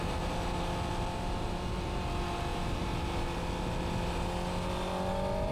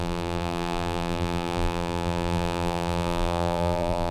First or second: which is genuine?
first